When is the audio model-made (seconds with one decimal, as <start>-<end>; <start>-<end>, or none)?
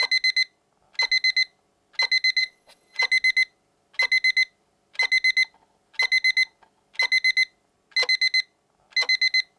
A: 2.4-3.0